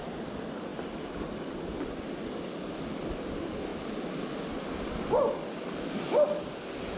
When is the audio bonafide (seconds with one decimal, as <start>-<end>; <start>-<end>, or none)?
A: 0.0-7.0